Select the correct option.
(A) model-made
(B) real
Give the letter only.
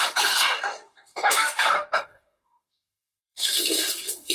A